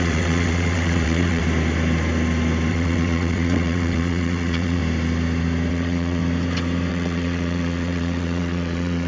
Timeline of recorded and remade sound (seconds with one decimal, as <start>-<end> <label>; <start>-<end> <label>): 0.0-1.4 remade; 1.4-2.7 recorded; 2.7-4.8 remade; 4.8-5.7 recorded; 5.7-6.2 remade; 6.2-6.9 recorded; 6.9-9.1 remade